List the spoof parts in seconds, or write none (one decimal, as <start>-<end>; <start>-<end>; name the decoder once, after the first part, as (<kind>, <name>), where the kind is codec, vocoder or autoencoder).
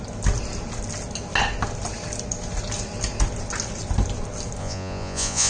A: 4.6-5.5 (vocoder, Vocos)